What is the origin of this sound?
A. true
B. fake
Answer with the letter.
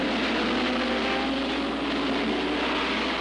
A